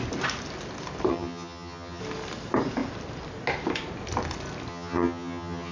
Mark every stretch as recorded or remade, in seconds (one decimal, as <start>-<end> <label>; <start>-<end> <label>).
0.0-1.1 recorded; 1.1-2.0 remade; 2.0-4.7 recorded; 4.7-5.7 remade